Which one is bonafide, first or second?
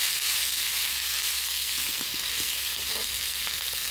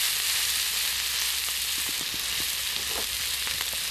second